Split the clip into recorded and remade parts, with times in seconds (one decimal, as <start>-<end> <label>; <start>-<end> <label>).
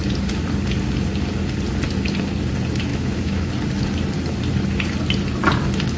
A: 0.0-2.9 recorded; 2.9-3.5 remade; 3.5-6.0 recorded